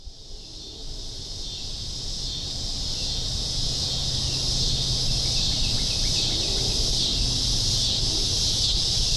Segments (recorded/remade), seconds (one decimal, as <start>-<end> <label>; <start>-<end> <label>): 0.0-0.8 remade; 0.8-4.3 recorded; 4.3-7.1 remade; 7.1-8.1 recorded; 8.1-9.2 remade